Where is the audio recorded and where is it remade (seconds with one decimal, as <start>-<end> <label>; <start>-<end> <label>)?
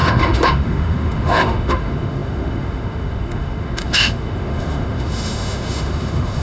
0.0-6.4 remade